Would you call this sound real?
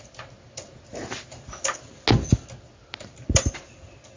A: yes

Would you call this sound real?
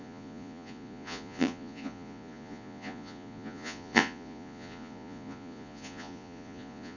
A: no